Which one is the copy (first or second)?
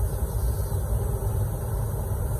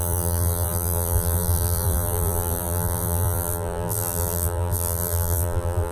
second